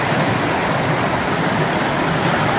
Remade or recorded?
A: recorded